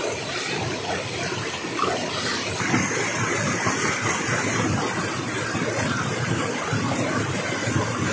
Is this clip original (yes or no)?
yes